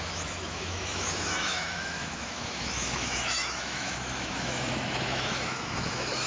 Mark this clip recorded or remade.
remade